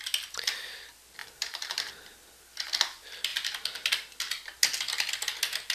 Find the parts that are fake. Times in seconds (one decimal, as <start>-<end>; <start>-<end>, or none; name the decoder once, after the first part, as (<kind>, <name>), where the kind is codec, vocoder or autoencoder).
1.2-1.9 (vocoder, BigVGAN v2)